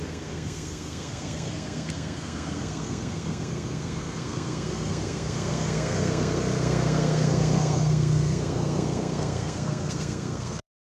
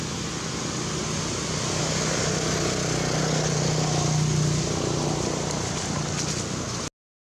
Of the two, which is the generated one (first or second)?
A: first